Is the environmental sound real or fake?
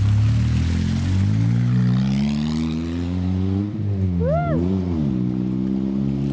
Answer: real